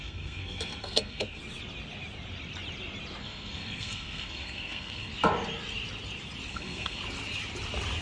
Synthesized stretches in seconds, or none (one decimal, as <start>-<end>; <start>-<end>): 0.0-1.4; 3.2-5.1; 6.5-7.0